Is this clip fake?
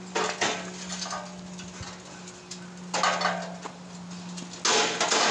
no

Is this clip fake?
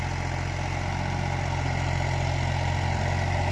no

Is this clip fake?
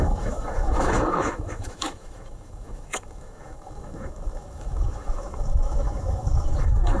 yes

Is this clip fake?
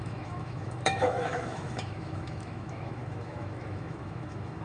yes